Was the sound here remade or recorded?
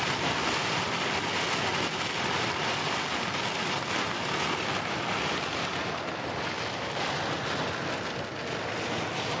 recorded